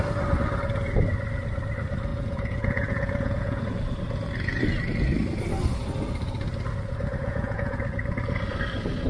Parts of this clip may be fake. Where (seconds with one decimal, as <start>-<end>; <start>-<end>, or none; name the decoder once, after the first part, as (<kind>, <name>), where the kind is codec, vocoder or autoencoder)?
2.1-3.6 (vocoder, Vocos); 7.2-7.8